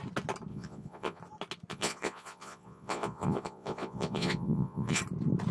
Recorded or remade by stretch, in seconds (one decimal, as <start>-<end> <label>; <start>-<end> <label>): 0.0-0.5 recorded; 0.5-1.2 remade; 1.2-1.7 recorded; 1.7-5.0 remade; 5.0-5.5 recorded

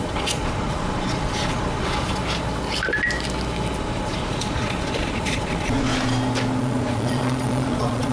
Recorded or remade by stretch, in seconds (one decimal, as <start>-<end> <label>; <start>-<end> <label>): 0.0-2.2 remade; 2.2-3.8 recorded; 3.8-5.9 remade; 5.9-6.6 recorded; 6.6-8.1 remade

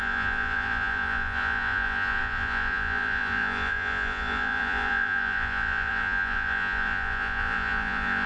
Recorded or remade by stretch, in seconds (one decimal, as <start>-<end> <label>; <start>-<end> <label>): 0.0-8.3 remade

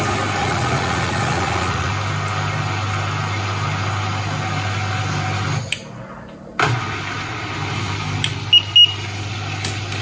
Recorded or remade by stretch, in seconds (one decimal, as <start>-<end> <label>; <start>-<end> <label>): 0.0-0.4 recorded; 0.4-1.9 remade; 1.9-10.0 recorded

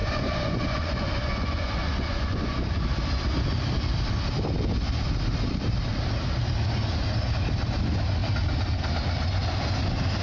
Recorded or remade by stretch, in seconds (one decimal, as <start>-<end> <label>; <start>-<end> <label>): 0.0-2.8 remade; 2.8-10.2 recorded

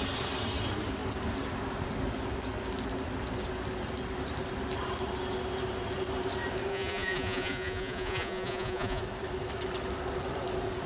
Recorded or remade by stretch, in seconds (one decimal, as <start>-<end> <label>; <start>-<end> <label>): 0.0-6.7 recorded; 6.7-9.0 remade; 9.0-10.9 recorded

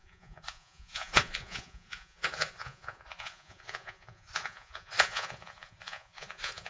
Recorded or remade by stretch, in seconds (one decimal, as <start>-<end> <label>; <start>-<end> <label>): 0.0-6.7 remade

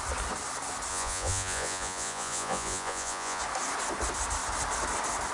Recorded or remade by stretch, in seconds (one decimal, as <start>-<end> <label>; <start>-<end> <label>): 0.0-0.9 recorded; 0.9-3.4 remade; 3.4-5.3 recorded